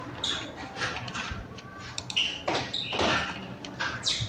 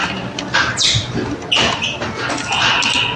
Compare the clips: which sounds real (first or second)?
second